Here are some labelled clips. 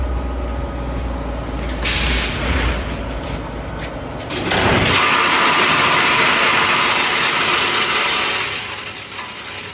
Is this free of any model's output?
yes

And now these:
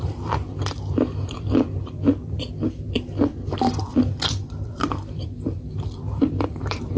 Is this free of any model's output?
no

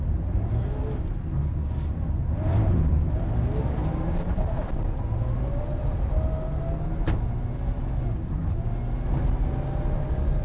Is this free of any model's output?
yes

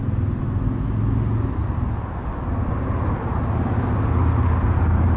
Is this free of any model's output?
yes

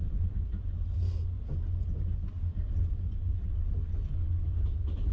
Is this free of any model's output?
yes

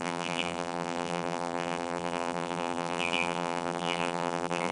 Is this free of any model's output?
no